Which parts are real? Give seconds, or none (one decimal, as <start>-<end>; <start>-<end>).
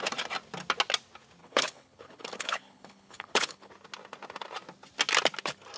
0.0-1.4; 3.7-5.8